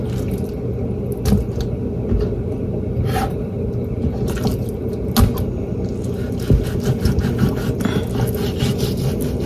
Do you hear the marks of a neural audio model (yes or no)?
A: no